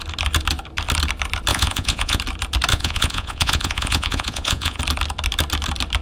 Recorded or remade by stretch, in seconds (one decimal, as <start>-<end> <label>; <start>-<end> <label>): 0.0-1.5 recorded; 1.5-2.2 remade; 2.2-2.7 recorded; 2.7-4.8 remade; 4.8-6.0 recorded